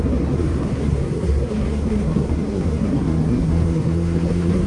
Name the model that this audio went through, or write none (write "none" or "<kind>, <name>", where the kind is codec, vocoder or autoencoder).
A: codec, SNAC